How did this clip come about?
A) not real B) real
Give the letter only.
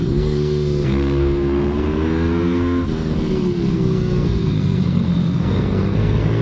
A